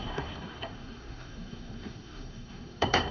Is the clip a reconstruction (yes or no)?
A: yes